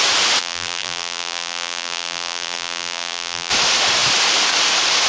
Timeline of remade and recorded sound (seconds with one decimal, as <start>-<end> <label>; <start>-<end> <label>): 0.0-0.4 recorded; 0.4-3.5 remade; 3.5-5.1 recorded